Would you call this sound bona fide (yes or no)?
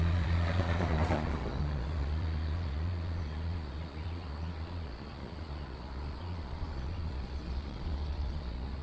no